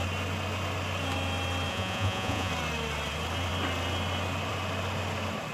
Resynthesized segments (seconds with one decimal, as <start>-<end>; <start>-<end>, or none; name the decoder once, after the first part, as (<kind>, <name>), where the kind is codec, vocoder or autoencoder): 1.7-2.5 (vocoder, Vocos)